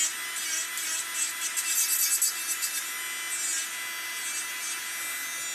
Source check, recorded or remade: recorded